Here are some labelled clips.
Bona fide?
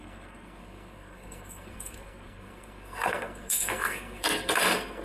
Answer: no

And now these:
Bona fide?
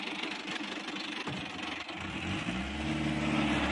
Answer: yes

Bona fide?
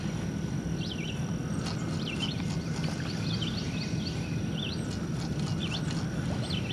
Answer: yes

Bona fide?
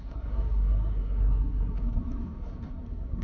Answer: no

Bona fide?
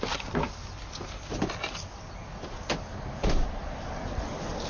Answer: yes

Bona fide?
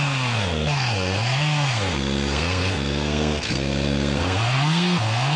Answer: no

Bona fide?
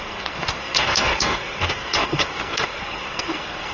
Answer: no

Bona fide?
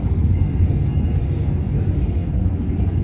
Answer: no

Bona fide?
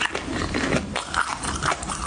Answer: yes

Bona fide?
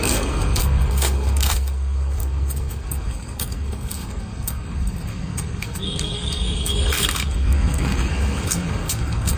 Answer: no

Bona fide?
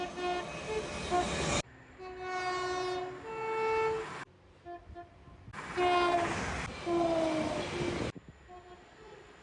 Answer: yes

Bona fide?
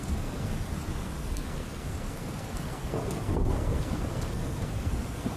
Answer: no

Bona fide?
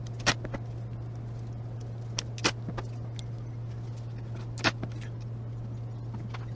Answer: yes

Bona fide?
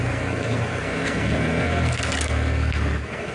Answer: no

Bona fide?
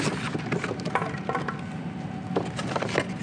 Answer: yes